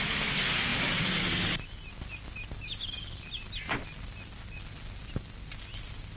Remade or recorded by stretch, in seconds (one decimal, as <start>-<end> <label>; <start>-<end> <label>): 0.0-6.2 recorded